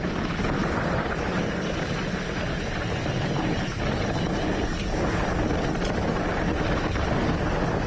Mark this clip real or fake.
real